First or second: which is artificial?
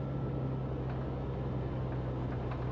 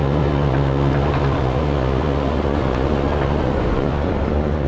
second